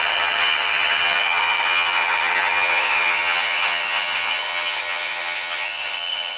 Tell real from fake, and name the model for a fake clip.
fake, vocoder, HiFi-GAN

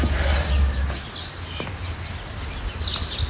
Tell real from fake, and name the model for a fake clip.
real